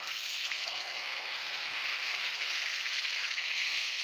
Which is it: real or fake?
fake